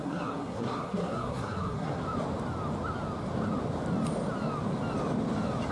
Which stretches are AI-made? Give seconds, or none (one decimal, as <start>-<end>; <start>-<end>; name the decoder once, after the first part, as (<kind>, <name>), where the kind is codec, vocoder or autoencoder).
0.0-2.0 (codec, SNAC)